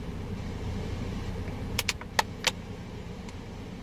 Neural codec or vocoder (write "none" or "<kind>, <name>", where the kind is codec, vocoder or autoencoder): none